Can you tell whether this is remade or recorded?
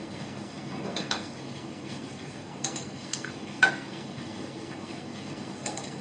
remade